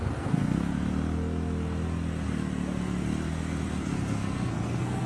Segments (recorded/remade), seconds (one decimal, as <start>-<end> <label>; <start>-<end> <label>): 0.0-0.7 remade; 0.7-3.8 recorded; 3.8-5.1 remade